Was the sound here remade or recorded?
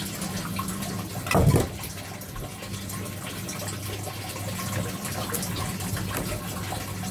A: recorded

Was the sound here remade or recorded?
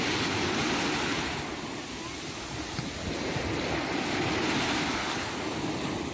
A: recorded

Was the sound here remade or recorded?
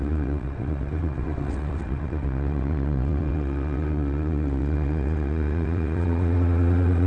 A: remade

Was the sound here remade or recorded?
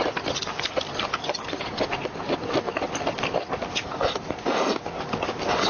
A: recorded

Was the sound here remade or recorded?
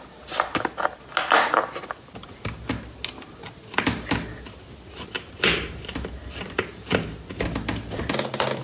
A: recorded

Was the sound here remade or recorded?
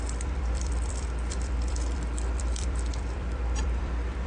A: remade